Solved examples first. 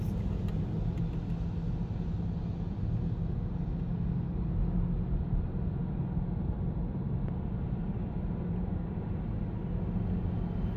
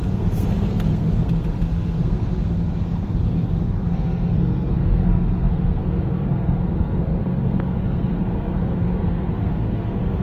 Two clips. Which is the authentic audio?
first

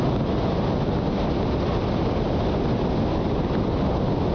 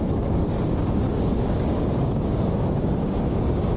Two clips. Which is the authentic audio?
first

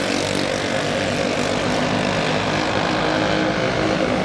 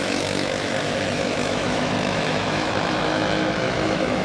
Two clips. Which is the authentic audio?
first